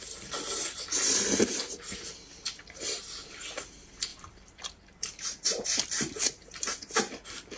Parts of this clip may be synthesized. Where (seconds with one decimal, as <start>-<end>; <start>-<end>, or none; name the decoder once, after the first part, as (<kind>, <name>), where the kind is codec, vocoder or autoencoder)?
4.1-7.1 (vocoder, BigVGAN v2)